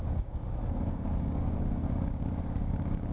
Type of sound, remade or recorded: remade